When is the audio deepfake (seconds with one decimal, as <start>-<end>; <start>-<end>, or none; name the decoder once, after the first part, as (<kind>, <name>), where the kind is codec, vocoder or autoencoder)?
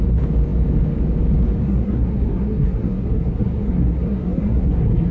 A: 1.6-5.1 (codec, SNAC)